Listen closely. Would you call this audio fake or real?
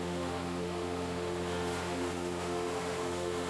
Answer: fake